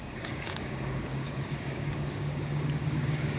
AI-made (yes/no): yes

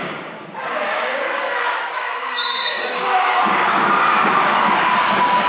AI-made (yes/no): yes